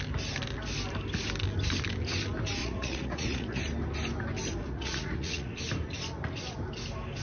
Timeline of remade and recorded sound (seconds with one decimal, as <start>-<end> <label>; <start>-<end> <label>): 0.0-2.6 recorded; 2.6-3.6 remade; 3.6-4.6 recorded; 4.6-5.5 remade; 5.5-7.2 recorded

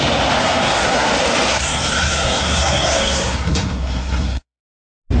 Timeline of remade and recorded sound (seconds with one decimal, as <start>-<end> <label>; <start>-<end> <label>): 0.0-0.4 recorded; 0.4-1.1 remade; 1.1-1.5 recorded; 1.5-4.6 remade; 4.6-5.2 recorded

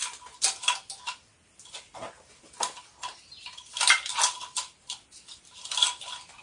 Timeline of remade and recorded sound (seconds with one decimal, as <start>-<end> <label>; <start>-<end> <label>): 0.0-6.4 recorded

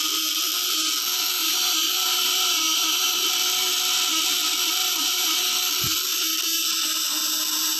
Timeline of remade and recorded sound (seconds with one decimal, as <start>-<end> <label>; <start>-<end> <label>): 0.0-1.4 recorded; 1.4-3.3 remade; 3.3-4.8 recorded; 4.8-5.4 remade; 5.4-7.8 recorded

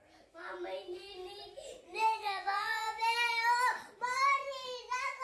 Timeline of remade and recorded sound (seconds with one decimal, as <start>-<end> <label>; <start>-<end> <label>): 0.0-2.2 recorded; 2.2-3.0 remade; 3.0-5.2 recorded

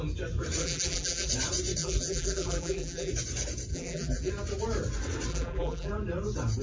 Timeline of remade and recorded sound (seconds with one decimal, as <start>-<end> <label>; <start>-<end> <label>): 0.0-0.6 recorded; 0.6-1.3 remade; 1.3-1.8 recorded; 1.8-3.1 remade; 3.1-3.7 recorded; 3.7-4.3 remade; 4.3-5.3 recorded; 5.3-5.9 remade; 5.9-6.6 recorded

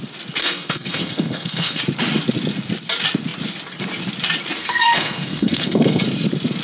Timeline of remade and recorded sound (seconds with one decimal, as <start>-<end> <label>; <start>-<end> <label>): 0.0-0.4 recorded; 0.4-1.8 remade; 1.8-4.6 recorded; 4.6-6.0 remade; 6.0-6.6 recorded